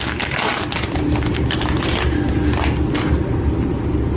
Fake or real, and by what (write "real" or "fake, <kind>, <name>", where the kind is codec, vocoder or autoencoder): real